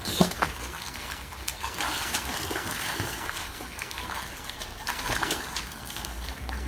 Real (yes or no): no